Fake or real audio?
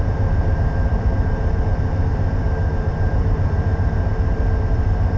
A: fake